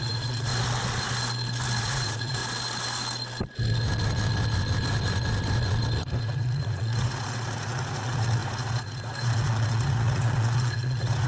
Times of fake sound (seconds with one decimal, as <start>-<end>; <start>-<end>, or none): 0.0-0.5; 1.8-2.4; 6.0-11.3